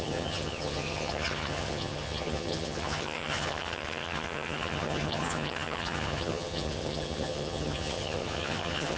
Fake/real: fake